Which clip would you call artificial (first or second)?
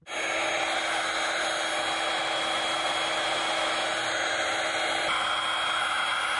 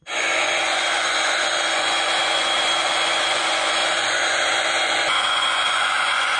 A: second